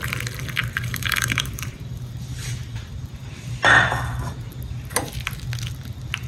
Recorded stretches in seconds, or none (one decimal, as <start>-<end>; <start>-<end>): 0.0-0.6; 3.3-6.3